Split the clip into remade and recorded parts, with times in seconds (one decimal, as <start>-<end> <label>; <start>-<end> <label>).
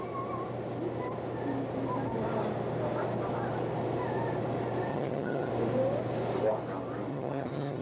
0.0-4.9 recorded; 4.9-5.5 remade; 5.5-7.1 recorded; 7.1-7.8 remade